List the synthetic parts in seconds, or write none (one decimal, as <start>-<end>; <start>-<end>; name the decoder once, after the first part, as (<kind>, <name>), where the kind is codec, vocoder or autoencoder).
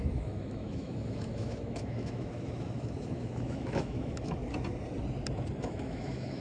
0.0-4.4 (autoencoder, DAC-VAE); 5.6-6.4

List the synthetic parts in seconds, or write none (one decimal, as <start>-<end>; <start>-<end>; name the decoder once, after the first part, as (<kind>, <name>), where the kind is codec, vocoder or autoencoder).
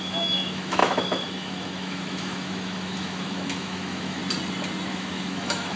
0.0-4.2 (autoencoder, DAC-VAE); 4.9-5.8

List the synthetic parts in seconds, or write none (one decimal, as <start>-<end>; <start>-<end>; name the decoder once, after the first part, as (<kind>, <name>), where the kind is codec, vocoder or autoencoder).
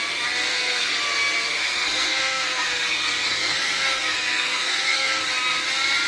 0.5-1.0 (codec, SNAC); 1.5-5.2